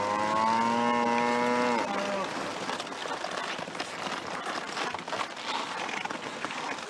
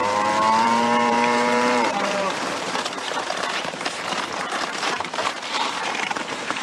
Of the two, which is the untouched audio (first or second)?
first